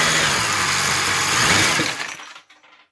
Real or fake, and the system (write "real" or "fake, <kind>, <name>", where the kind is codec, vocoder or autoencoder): real